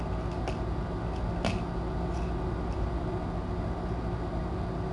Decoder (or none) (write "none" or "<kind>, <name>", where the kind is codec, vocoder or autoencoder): none